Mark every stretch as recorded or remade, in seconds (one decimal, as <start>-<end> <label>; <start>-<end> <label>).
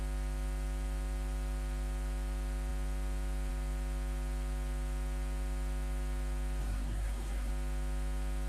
0.0-6.6 recorded; 6.6-7.5 remade; 7.5-8.5 recorded